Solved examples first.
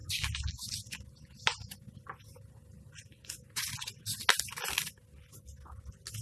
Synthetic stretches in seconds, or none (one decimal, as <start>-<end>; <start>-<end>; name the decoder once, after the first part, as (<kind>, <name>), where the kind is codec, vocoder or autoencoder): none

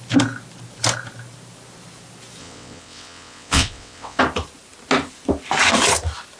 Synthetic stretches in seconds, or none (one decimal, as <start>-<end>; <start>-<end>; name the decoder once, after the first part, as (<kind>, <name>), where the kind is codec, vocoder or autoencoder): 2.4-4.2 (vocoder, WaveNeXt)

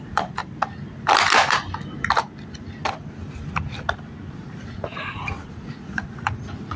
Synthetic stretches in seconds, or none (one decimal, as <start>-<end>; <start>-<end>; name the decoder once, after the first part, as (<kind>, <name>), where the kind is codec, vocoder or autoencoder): 0.0-0.4 (vocoder, Vocos); 4.3-6.8

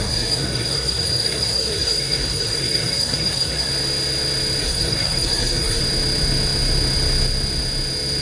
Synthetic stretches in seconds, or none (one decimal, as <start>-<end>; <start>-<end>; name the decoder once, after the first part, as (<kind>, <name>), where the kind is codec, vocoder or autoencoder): 0.0-3.7 (codec, SNAC); 4.6-5.8

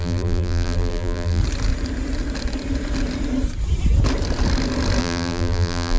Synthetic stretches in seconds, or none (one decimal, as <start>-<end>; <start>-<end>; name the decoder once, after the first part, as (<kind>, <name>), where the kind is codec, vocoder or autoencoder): 0.0-1.4 (vocoder, BigVGAN v2); 5.0-6.0